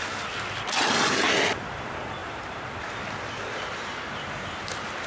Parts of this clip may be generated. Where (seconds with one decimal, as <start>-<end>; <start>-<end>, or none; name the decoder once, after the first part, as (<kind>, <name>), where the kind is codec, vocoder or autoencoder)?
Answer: 2.2-2.9 (vocoder, BigVGAN v2)